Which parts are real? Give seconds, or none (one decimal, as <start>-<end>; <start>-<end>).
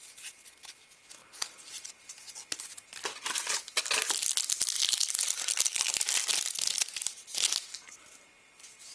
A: 0.0-8.9